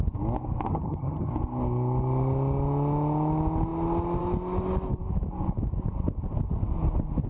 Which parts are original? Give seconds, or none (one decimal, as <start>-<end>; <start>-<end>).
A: 0.0-0.7; 1.3-7.3